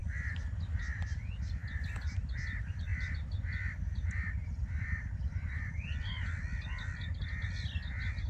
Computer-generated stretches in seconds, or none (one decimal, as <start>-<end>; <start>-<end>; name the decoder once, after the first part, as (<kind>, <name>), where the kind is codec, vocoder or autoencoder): 0.8-1.6 (vocoder, BigVGAN v2); 2.2-7.3